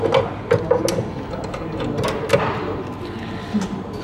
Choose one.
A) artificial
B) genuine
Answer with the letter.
B